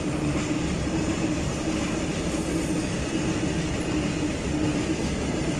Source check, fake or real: real